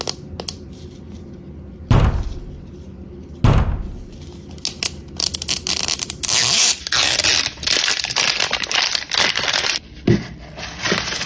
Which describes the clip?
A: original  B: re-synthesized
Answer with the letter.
A